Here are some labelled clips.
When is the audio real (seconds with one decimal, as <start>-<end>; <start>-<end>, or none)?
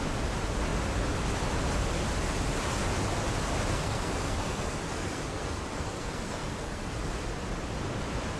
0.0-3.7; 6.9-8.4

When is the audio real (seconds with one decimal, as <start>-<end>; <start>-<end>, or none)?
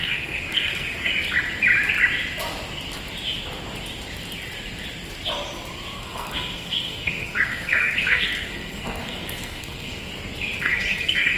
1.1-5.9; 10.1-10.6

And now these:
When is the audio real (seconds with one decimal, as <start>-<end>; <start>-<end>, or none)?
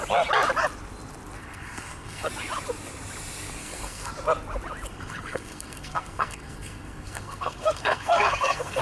0.0-1.4; 2.3-3.6; 4.1-4.9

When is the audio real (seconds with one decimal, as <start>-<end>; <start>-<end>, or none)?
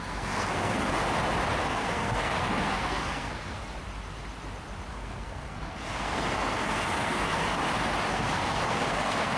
0.9-1.6; 3.8-4.9; 7.6-8.1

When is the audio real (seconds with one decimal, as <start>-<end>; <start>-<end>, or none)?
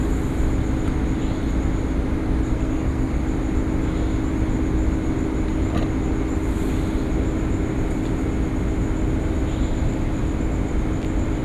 0.0-2.5; 3.2-11.4